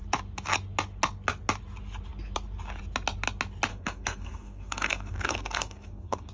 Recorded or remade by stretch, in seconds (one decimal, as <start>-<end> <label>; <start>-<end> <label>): 0.0-3.7 recorded; 3.7-6.3 remade